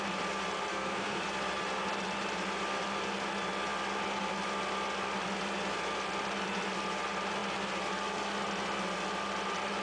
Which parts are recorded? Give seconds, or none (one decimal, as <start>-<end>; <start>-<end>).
0.0-0.7; 1.2-9.8